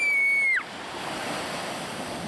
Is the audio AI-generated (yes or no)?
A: no